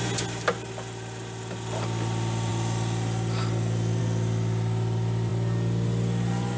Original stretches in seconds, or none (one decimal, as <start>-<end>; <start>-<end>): 0.0-6.6